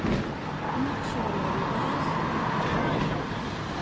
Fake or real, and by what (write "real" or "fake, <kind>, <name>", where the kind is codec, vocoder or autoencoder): real